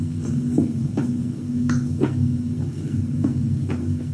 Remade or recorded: remade